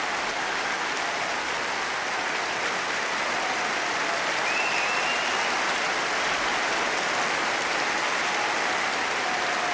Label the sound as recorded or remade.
recorded